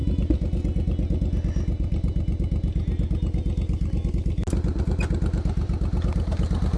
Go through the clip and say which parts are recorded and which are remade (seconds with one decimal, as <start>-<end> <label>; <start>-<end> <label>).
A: 0.0-6.8 recorded